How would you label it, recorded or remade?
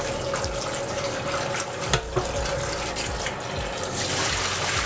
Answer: recorded